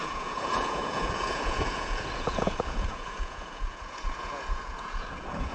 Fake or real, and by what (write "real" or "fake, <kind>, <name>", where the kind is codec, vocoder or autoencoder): fake, vocoder, Vocos